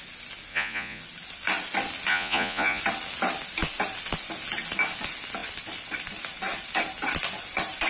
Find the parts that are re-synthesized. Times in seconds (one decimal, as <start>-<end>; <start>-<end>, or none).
0.5-1.0; 2.1-2.8